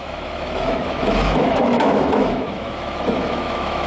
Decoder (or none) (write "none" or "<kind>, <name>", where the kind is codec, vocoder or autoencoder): autoencoder, DAC-VAE